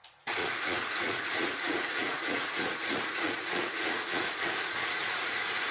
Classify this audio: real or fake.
fake